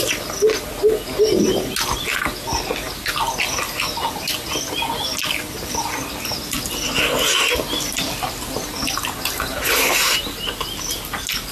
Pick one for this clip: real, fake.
real